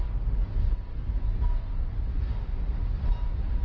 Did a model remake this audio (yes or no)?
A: no